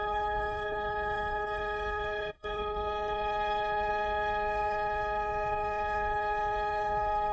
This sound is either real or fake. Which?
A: fake